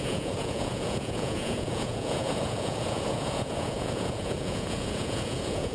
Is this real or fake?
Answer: fake